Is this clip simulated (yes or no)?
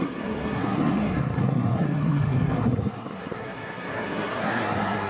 yes